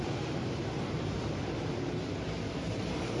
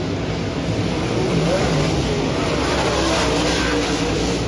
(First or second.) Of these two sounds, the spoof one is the first